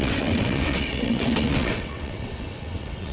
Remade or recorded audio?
remade